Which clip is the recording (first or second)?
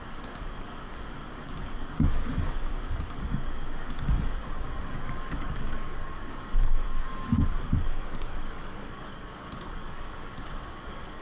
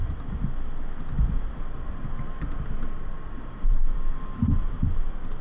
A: second